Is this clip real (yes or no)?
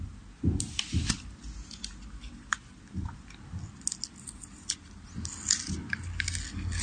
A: yes